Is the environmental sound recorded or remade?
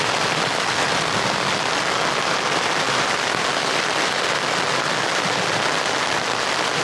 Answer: recorded